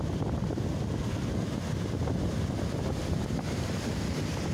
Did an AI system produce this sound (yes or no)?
no